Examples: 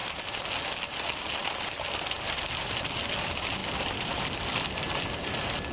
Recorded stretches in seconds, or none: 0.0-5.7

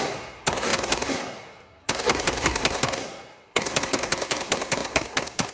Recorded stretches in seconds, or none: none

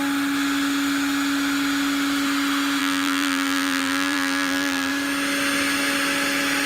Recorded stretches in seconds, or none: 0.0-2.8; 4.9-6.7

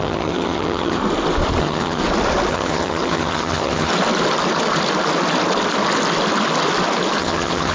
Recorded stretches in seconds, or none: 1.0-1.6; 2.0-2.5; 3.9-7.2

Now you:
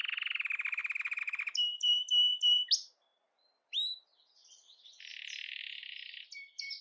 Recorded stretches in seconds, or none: 0.0-6.8

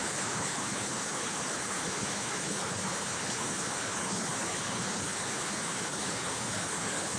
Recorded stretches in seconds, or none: none